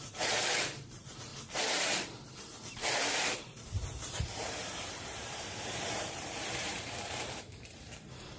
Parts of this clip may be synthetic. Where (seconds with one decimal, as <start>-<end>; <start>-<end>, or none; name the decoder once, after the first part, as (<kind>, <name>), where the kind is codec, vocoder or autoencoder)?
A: 0.0-1.3 (vocoder, BigVGAN v2); 2.3-8.4